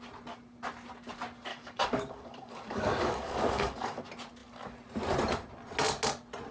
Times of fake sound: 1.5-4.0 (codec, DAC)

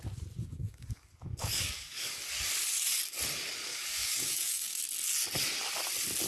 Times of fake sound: 0.4-2.4 (codec, DAC); 3.7-4.8

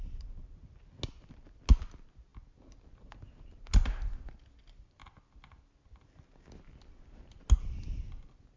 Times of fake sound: none

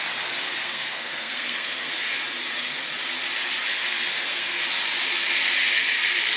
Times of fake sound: 0.6-1.9 (codec, SNAC); 3.7-4.6

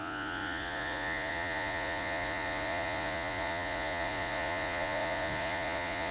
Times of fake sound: 0.0-6.1 (vocoder, Vocos)